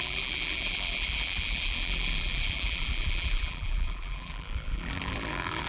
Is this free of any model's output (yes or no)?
no